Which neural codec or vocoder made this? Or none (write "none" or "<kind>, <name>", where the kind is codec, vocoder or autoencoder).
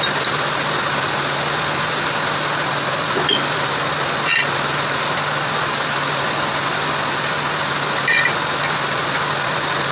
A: none